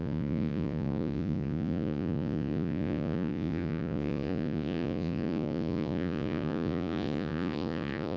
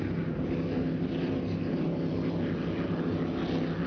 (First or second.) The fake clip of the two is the first